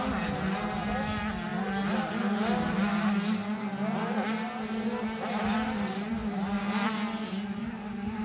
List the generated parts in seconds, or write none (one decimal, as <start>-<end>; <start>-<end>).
none